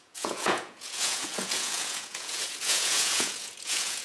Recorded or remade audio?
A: remade